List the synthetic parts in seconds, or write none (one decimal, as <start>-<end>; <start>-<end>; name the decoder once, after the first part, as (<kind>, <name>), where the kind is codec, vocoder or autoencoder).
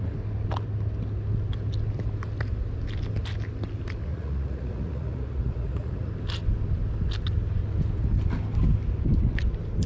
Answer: 4.1-6.1 (vocoder, Vocos)